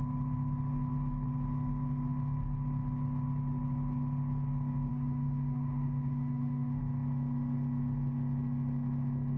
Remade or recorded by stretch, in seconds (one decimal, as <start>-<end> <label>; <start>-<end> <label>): 0.0-4.9 recorded; 4.9-6.8 remade; 6.8-9.4 recorded